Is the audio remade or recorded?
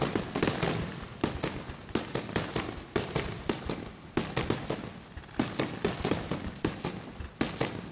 recorded